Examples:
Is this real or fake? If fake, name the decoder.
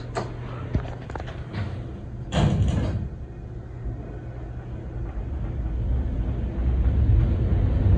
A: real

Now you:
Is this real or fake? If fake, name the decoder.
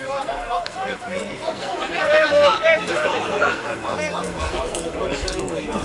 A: fake, codec, SNAC